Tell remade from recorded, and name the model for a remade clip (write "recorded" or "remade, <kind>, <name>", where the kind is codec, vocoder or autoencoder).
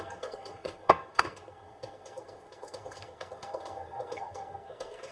remade, codec, SNAC